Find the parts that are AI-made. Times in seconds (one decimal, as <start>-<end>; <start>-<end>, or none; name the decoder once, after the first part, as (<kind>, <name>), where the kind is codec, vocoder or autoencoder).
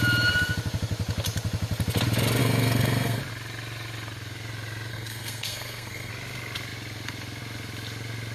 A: 2.4-3.2 (codec, SNAC); 4.9-6.1